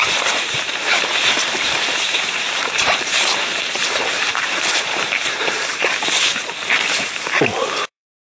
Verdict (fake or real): fake